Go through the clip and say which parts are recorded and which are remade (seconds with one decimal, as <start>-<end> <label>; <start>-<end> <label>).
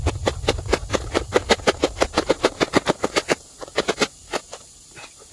0.0-5.3 recorded